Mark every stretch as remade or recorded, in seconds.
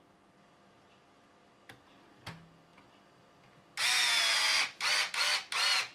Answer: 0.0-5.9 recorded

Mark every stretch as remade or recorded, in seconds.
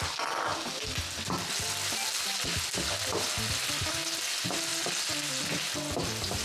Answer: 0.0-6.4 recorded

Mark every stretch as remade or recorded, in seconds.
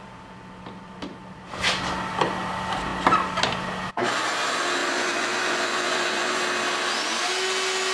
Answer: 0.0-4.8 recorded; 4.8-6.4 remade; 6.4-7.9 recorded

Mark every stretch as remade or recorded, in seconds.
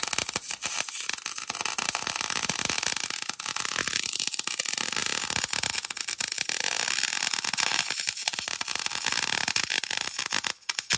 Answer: 0.0-11.0 recorded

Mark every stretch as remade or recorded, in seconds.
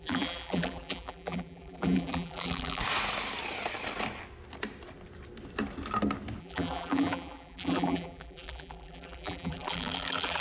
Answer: 0.0-2.8 remade; 2.8-6.4 recorded; 6.4-10.4 remade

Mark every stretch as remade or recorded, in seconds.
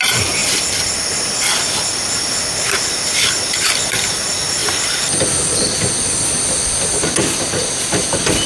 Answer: 0.0-0.4 remade; 0.4-3.5 recorded; 3.5-8.5 remade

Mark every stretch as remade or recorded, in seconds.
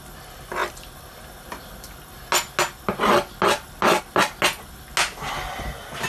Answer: 0.0-6.1 recorded